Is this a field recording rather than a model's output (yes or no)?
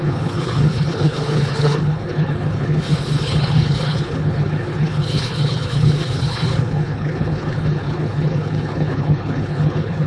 no